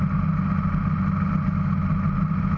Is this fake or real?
real